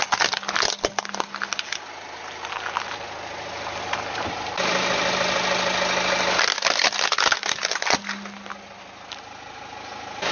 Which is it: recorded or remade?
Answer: recorded